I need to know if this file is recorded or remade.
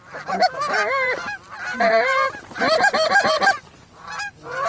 remade